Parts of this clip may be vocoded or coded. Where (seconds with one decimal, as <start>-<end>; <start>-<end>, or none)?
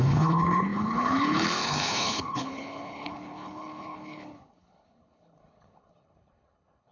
0.0-6.9